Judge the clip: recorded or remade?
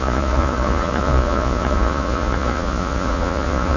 remade